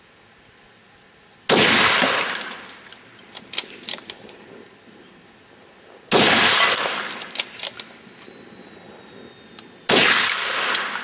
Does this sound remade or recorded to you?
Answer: recorded